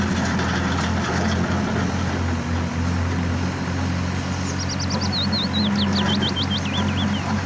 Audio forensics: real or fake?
real